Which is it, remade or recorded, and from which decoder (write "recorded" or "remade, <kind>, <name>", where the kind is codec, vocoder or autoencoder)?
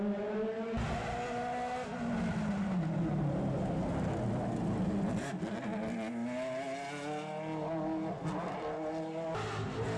recorded